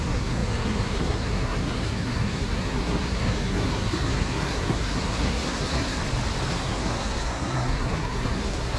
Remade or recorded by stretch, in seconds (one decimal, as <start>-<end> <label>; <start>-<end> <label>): 0.0-6.0 remade; 6.0-6.5 recorded; 6.5-8.8 remade